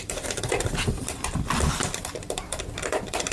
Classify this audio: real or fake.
fake